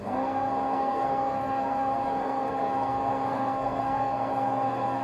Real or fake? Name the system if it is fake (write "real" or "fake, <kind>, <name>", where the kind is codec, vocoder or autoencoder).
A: fake, codec, SNAC